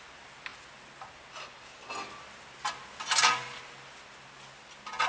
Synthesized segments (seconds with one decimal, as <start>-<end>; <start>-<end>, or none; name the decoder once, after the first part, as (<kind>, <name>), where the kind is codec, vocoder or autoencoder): none